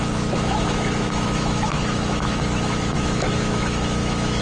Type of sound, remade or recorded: remade